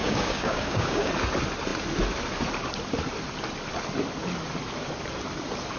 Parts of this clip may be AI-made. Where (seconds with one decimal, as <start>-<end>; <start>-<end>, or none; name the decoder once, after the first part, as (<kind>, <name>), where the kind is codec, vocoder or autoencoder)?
0.0-1.1 (codec, DAC)